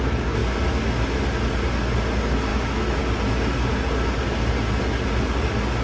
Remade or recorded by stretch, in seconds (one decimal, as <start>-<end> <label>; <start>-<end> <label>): 0.0-2.5 recorded; 2.5-3.0 remade; 3.0-5.8 recorded